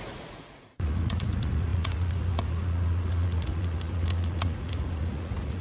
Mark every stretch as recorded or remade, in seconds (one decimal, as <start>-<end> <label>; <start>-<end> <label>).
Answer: 0.0-5.6 remade